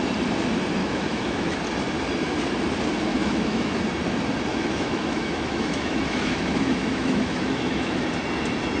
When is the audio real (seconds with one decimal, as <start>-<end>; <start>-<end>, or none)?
0.0-0.8; 1.6-3.1; 3.8-4.5; 8.0-8.8

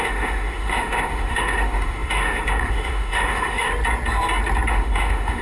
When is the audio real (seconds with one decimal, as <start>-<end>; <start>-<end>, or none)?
3.7-4.7

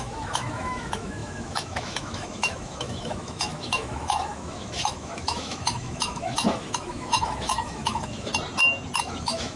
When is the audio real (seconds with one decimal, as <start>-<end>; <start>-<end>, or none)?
8.3-9.0

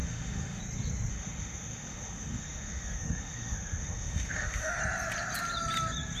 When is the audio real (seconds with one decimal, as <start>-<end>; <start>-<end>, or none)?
0.6-1.1; 4.8-6.2

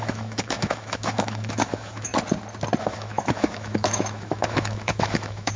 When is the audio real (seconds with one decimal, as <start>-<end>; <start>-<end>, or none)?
2.1-2.8